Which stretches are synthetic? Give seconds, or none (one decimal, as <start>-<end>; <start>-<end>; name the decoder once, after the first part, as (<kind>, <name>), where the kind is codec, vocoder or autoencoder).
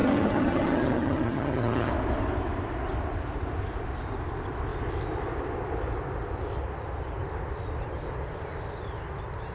0.0-1.9 (vocoder, HiFi-GAN)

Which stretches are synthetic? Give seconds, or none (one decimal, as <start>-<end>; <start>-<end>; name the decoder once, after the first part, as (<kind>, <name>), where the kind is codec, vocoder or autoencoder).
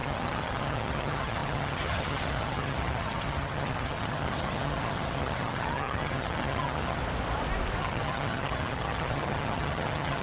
0.0-7.0 (vocoder, HiFi-GAN); 7.8-10.2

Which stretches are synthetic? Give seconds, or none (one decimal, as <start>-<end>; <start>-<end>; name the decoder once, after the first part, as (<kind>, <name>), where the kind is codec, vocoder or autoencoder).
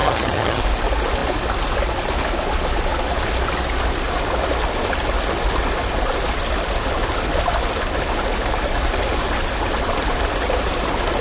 0.0-0.6 (vocoder, HiFi-GAN)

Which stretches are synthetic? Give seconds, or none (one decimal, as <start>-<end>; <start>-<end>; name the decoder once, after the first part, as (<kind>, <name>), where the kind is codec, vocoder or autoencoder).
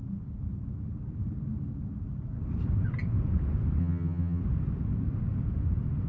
3.8-4.4 (vocoder, HiFi-GAN)